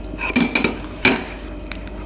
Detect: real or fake real